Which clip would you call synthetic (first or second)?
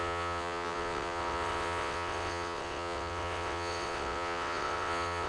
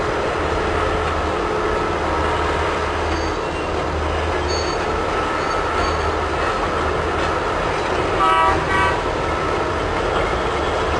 first